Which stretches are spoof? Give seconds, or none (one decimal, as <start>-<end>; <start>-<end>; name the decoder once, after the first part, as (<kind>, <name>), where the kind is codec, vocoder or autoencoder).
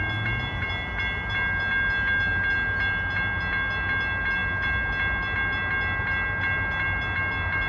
none